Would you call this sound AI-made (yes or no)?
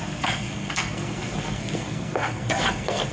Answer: yes